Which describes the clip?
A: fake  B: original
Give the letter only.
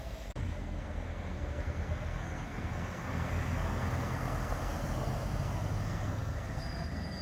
A